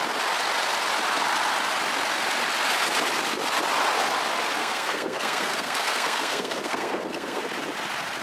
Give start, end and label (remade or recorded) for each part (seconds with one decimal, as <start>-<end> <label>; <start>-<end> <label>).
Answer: 0.0-4.6 recorded; 4.6-7.4 remade; 7.4-8.2 recorded